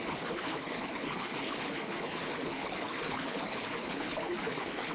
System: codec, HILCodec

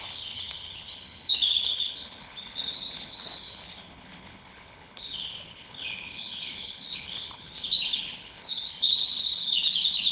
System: codec, HILCodec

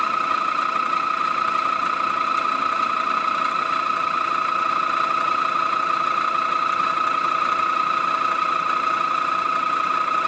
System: none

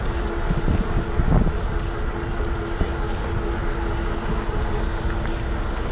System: none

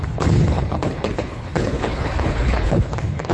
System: codec, HILCodec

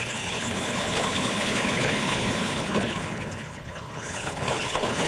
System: codec, HILCodec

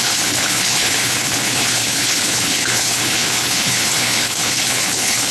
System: codec, HILCodec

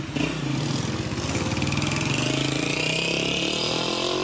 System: none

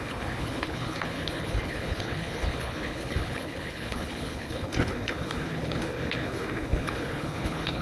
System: codec, HILCodec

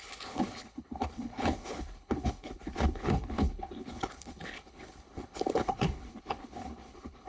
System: codec, HILCodec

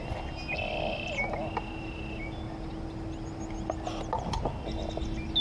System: none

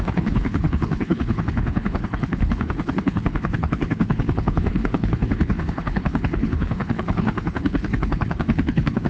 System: codec, HILCodec